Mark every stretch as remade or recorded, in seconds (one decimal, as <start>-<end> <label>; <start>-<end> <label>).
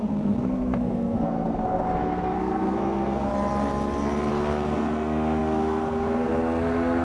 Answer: 0.0-3.3 remade; 3.3-4.3 recorded; 4.3-7.0 remade